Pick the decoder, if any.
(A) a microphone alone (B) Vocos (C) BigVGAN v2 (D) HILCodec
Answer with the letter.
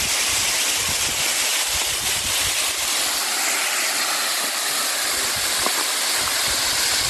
A